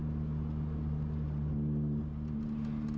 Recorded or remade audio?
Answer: recorded